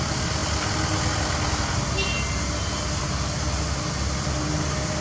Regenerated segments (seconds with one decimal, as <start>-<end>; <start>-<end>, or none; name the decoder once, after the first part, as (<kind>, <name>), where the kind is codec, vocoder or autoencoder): none